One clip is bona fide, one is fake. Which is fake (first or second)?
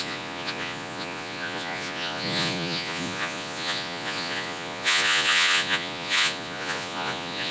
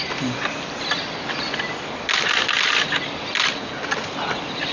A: first